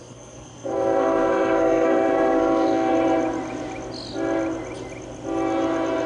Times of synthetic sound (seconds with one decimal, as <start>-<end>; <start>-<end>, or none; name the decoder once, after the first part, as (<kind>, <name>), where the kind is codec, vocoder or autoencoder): 0.0-2.9 (codec, SNAC)